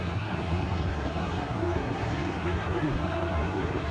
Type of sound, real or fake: fake